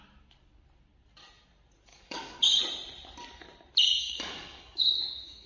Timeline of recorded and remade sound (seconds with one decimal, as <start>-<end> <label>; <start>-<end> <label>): 0.0-1.9 recorded; 1.9-2.6 remade; 2.6-4.0 recorded; 4.0-5.5 remade